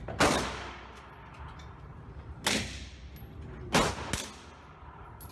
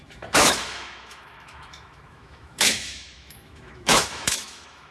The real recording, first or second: first